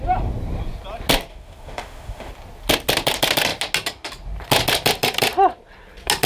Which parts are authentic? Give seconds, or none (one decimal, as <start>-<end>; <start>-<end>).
0.0-1.3; 2.3-6.3

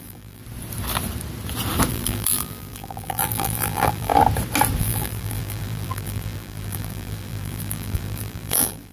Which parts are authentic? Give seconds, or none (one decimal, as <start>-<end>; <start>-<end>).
0.4-1.9; 4.1-4.8